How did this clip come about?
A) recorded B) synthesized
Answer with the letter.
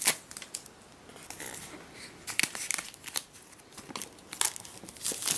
A